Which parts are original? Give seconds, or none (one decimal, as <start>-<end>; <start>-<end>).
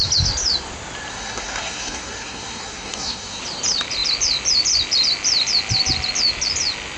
0.0-1.1; 3.4-7.0